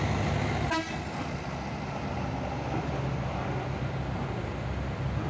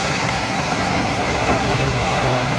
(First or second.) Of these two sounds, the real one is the first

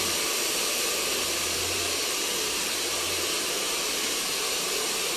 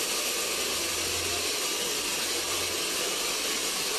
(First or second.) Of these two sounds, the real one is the second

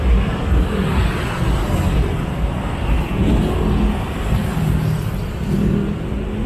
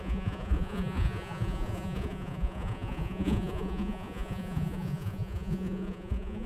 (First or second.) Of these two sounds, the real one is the first